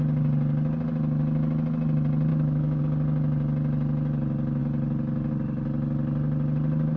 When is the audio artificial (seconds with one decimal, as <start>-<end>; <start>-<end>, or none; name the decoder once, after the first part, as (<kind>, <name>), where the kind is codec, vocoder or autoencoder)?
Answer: 2.3-2.8 (autoencoder, DAC-VAE)

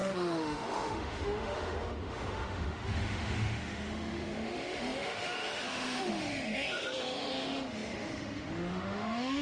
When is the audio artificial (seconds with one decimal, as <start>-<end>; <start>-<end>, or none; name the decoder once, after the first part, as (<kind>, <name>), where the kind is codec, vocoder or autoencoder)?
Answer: 0.0-9.4 (autoencoder, DAC-VAE)

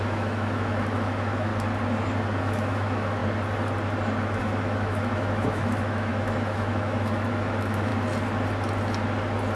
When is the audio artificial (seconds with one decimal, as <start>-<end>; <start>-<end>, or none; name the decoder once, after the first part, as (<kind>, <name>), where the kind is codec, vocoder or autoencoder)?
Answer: 0.0-1.5 (autoencoder, DAC-VAE); 2.4-3.2; 4.4-7.9

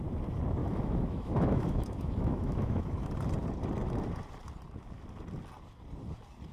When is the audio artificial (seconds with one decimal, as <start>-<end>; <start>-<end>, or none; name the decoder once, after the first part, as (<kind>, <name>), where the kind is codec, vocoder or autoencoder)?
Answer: 0.6-3.1 (autoencoder, DAC-VAE)

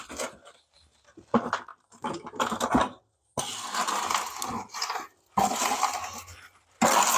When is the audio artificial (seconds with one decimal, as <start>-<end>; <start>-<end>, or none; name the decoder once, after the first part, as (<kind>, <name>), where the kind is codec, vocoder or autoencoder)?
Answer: none

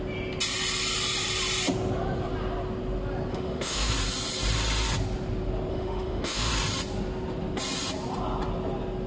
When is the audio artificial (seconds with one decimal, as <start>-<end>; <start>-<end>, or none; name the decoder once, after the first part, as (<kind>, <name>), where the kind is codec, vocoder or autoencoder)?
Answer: 3.3-3.9 (autoencoder, DAC-VAE); 5.7-6.5

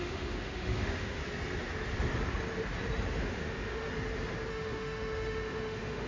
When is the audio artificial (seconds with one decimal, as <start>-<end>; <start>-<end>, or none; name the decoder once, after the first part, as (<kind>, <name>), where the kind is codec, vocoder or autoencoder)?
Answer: 0.0-1.2 (autoencoder, DAC-VAE); 3.2-3.9; 4.5-6.1

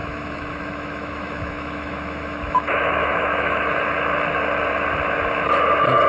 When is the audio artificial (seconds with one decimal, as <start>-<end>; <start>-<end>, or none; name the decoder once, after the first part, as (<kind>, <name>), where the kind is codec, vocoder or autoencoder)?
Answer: 0.0-3.7 (autoencoder, DAC-VAE)